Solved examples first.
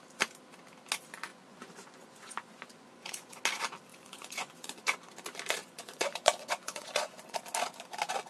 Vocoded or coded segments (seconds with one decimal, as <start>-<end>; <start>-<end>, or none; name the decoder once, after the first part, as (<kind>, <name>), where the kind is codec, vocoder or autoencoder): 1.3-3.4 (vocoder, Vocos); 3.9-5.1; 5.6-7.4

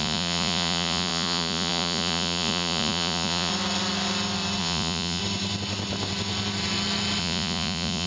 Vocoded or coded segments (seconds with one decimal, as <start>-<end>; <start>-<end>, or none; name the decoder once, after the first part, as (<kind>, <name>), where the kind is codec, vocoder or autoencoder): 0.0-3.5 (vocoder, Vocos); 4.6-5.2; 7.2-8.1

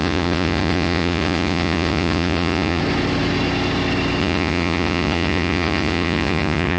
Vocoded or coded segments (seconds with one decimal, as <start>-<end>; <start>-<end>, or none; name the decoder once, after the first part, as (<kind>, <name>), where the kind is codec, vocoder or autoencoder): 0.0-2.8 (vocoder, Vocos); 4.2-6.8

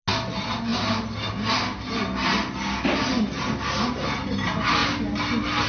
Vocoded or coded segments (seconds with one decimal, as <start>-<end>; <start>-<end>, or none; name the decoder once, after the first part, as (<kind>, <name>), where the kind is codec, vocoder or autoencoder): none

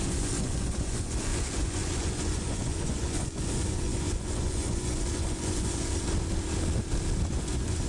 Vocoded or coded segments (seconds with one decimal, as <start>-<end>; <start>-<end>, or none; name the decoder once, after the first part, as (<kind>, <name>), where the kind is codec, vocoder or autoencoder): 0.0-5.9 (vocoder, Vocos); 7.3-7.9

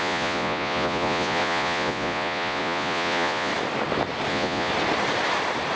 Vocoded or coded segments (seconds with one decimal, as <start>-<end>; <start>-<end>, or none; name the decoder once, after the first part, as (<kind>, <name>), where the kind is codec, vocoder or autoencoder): 0.0-3.5 (vocoder, Vocos); 4.3-4.7

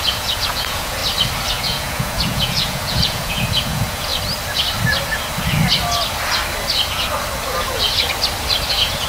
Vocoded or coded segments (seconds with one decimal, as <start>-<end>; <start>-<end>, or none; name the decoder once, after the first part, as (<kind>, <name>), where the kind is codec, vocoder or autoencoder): 0.0-1.0 (vocoder, Vocos); 1.5-4.1; 8.7-9.1